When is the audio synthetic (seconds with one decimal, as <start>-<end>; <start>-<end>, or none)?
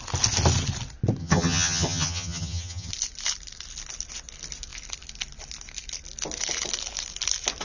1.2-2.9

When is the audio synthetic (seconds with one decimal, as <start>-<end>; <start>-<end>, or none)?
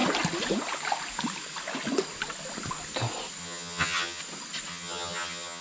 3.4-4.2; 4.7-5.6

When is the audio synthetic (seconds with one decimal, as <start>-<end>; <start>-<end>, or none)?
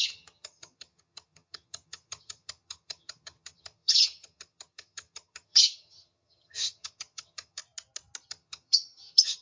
0.0-7.6; 8.3-9.4